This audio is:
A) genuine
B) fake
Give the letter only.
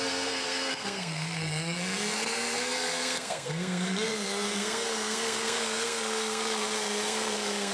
B